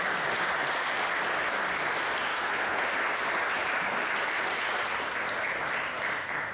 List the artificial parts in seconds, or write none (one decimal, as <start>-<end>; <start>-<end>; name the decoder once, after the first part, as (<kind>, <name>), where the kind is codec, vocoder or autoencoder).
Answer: 2.3-2.9 (codec, SNAC)